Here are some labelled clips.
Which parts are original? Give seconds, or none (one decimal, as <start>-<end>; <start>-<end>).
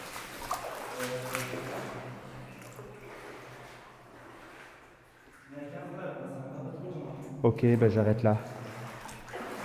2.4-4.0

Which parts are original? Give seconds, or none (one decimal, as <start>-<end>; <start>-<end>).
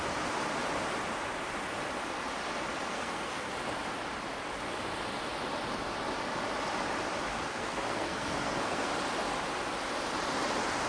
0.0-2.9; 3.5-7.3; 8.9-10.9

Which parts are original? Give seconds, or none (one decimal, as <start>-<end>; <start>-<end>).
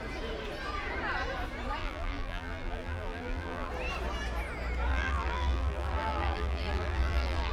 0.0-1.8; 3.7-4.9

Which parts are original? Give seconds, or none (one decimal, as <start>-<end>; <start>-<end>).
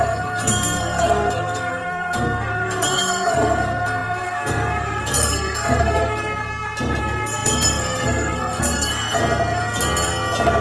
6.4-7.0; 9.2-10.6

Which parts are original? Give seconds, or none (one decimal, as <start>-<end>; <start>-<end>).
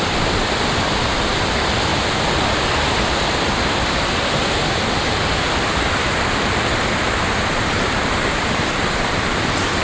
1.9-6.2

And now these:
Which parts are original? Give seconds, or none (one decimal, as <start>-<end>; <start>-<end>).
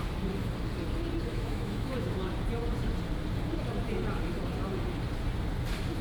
0.0-1.3; 2.3-6.0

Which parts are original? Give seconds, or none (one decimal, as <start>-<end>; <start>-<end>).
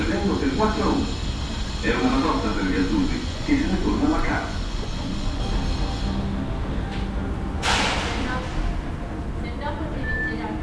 0.0-2.5; 5.4-10.6